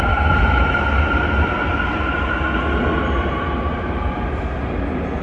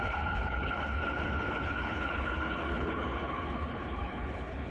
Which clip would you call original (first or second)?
first